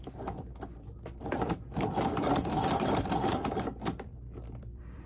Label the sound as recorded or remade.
remade